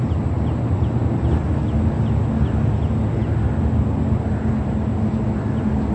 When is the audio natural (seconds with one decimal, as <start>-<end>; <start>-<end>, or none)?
0.0-5.9